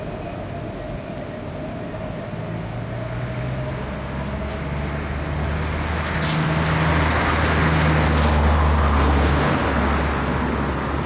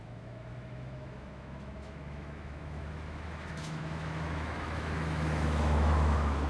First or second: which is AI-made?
second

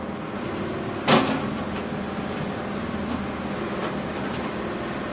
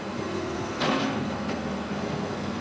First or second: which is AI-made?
second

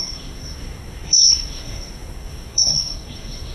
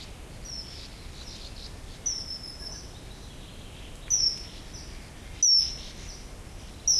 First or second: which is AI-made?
first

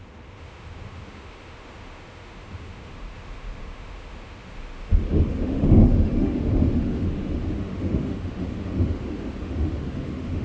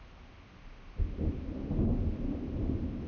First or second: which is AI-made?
first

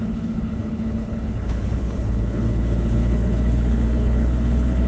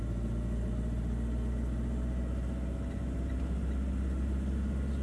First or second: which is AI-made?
first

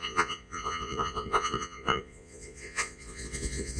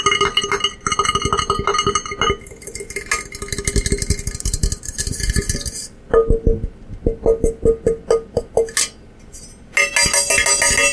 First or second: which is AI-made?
first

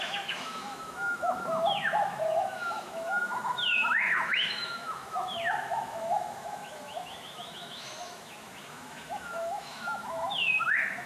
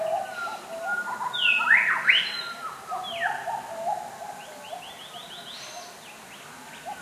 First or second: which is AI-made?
first